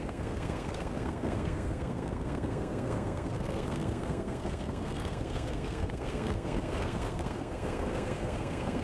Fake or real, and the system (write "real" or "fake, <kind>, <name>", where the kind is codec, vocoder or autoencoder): fake, codec, SNAC